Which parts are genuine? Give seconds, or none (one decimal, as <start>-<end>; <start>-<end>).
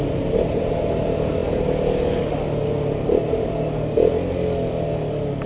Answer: 0.0-5.5